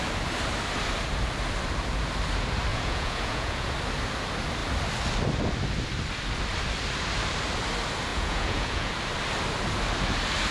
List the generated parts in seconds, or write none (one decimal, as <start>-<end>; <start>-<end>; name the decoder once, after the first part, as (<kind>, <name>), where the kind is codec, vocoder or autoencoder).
2.7-3.7 (vocoder, Vocos); 8.1-8.9